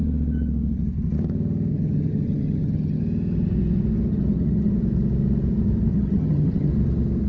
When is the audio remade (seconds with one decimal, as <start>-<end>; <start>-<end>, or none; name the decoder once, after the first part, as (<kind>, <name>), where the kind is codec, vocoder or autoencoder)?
1.7-3.0 (vocoder, HiFi-GAN); 4.1-4.7; 5.9-6.7